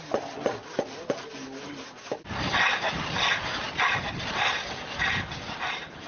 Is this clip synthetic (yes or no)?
no